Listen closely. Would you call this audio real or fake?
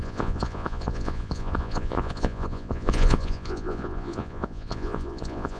fake